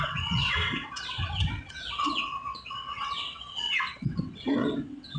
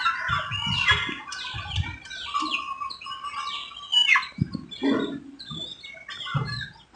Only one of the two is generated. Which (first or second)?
first